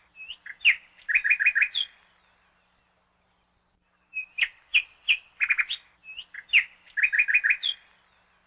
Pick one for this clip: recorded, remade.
recorded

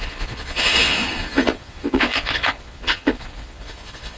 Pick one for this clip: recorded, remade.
remade